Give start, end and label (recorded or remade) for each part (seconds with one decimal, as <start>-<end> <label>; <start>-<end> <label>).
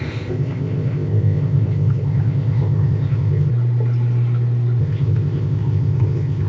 0.0-3.5 remade; 3.5-4.8 recorded; 4.8-6.5 remade